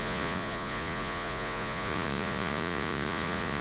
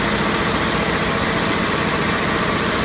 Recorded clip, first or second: second